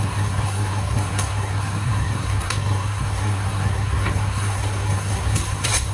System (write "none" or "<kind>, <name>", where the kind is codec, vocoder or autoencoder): codec, SNAC